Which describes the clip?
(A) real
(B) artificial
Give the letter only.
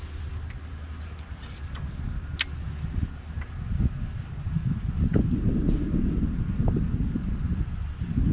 A